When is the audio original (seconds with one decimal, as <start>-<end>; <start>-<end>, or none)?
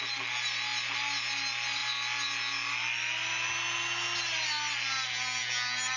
0.0-6.0